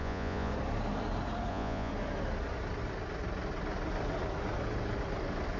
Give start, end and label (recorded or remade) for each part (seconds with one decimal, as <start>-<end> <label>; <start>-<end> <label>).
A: 0.0-0.5 remade; 0.5-1.5 recorded; 1.5-1.9 remade; 1.9-5.6 recorded